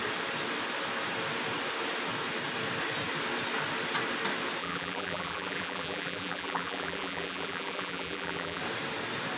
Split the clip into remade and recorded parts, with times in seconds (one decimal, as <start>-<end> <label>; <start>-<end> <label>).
0.0-4.6 recorded; 4.6-8.6 remade; 8.6-9.4 recorded